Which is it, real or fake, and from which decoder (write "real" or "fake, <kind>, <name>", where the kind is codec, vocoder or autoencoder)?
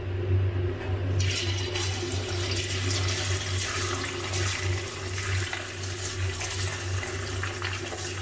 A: real